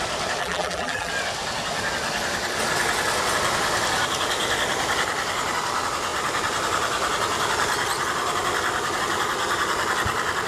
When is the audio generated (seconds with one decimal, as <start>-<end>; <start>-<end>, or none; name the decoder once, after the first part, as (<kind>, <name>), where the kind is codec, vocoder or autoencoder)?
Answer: 0.4-1.1 (vocoder, BigVGAN v2)